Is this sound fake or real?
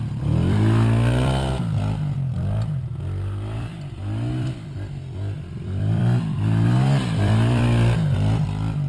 fake